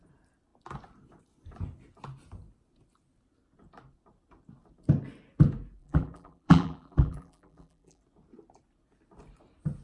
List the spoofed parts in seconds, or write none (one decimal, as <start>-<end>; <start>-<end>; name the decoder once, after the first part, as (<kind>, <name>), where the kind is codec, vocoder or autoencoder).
5.8-8.0 (vocoder, BigVGAN v2)